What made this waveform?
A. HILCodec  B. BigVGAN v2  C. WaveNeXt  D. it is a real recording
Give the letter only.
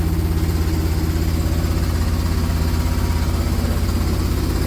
D